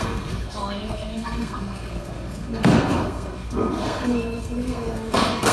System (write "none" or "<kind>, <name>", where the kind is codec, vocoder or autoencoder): codec, SNAC